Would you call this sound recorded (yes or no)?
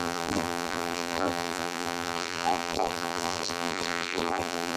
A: no